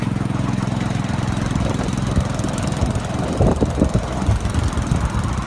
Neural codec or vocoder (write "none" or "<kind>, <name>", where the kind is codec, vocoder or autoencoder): none